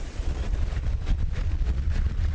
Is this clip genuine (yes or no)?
no